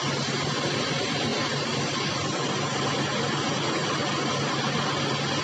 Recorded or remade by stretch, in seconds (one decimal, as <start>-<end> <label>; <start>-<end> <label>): 0.0-5.4 recorded